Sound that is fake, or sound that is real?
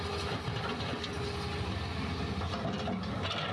real